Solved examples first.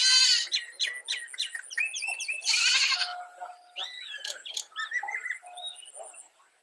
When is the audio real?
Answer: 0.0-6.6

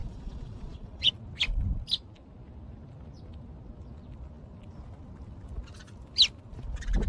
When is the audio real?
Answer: 1.1-7.1

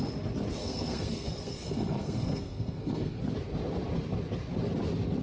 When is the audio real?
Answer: 0.0-0.6; 3.2-5.2

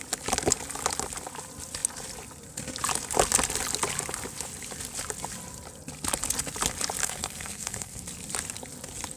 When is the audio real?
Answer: 0.0-7.0; 8.0-9.2

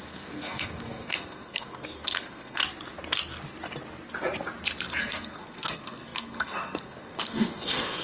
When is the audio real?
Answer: 2.6-5.0

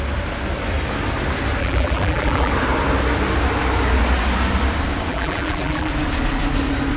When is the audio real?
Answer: 0.0-1.6; 2.5-5.1; 5.9-7.0

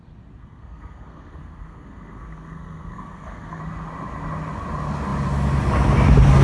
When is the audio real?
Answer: 0.0-0.4; 3.6-6.4

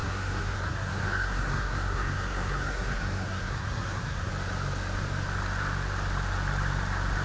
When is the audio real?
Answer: 4.3-7.2